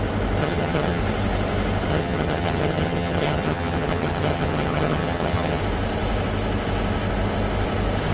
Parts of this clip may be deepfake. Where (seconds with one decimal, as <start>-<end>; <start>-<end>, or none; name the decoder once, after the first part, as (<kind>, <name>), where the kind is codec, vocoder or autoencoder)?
0.4-1.0 (vocoder, HiFi-GAN); 1.9-5.6